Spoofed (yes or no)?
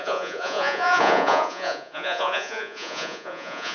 yes